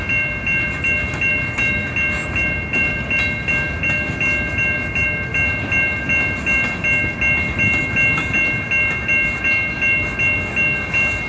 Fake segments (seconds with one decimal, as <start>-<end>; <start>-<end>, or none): none